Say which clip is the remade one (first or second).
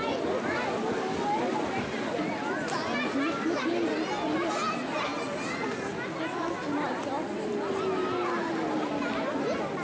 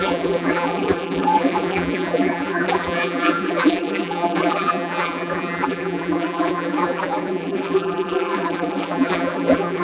second